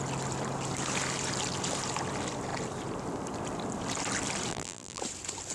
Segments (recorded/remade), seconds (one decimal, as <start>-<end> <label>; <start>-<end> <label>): 0.0-4.5 recorded; 4.5-5.0 remade; 5.0-5.5 recorded